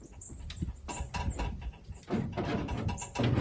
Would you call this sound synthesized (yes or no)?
no